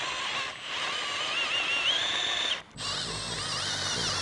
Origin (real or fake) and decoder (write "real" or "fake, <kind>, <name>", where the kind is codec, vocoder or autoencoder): real